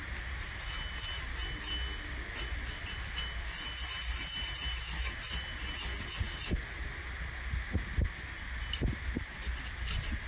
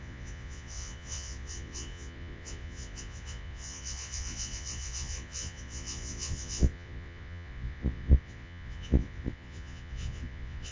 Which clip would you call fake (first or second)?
second